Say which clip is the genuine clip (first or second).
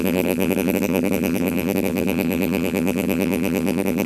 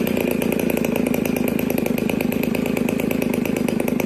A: second